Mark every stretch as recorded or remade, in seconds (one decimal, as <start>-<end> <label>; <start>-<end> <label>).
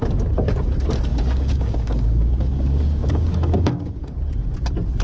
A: 0.0-1.1 recorded; 1.1-4.1 remade; 4.1-5.0 recorded